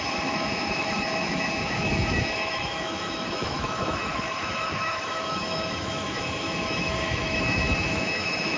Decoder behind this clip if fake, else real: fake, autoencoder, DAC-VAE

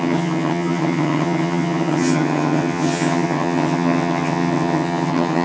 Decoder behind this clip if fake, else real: fake, vocoder, HiFi-GAN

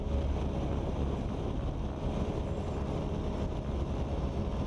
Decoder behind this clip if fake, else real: real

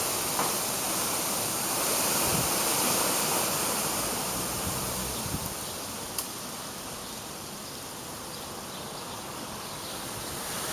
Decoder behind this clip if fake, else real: fake, vocoder, BigVGAN v2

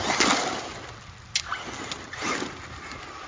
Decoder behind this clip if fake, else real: real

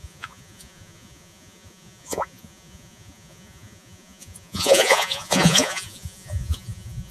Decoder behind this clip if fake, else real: fake, vocoder, Vocos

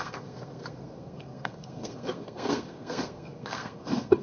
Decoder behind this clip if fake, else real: fake, codec, SNAC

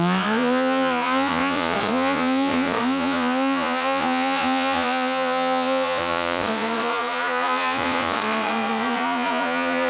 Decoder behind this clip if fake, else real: fake, vocoder, Vocos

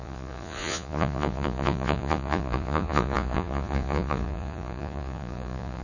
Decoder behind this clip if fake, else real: fake, vocoder, Vocos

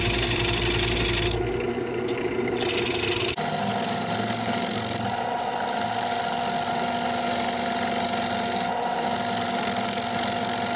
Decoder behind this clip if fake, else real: real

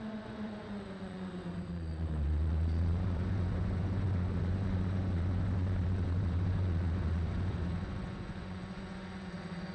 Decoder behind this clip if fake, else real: fake, vocoder, Vocos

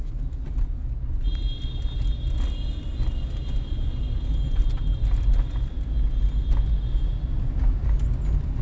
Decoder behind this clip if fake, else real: real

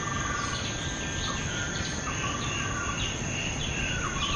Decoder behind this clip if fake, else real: fake, vocoder, BigVGAN v2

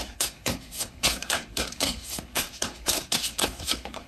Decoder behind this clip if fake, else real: fake, codec, SNAC